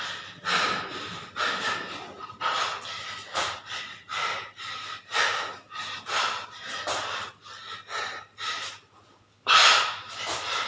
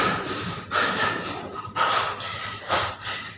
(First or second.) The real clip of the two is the first